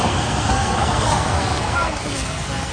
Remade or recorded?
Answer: remade